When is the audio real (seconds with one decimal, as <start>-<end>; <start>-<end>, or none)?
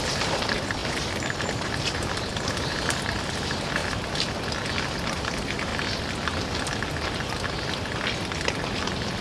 3.8-5.1; 5.7-9.2